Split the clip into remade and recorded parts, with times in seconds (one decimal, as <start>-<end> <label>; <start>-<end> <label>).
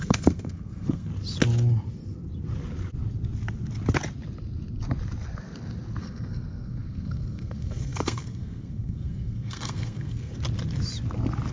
0.0-1.1 remade; 1.1-6.0 recorded; 6.0-10.3 remade; 10.3-11.5 recorded